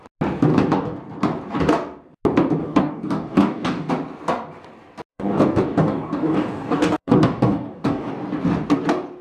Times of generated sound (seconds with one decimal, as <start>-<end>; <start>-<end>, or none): 0.5-1.0; 2.6-3.9; 5.1-8.1